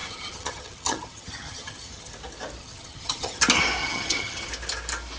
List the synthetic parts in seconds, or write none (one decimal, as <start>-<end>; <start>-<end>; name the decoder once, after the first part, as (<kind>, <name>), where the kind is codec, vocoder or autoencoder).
0.0-2.1 (vocoder, HiFi-GAN); 2.6-3.4; 3.8-4.5